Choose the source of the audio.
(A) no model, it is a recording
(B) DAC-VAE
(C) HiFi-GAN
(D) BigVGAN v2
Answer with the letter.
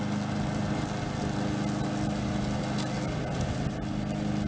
A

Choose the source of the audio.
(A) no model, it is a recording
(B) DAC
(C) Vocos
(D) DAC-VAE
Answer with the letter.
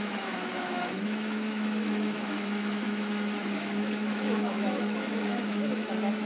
D